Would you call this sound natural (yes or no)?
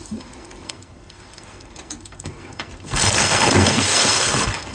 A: no